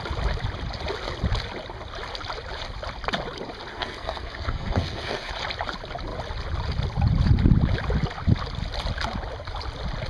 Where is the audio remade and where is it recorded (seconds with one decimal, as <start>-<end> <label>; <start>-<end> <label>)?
0.0-3.7 recorded; 3.7-5.3 remade; 5.3-10.1 recorded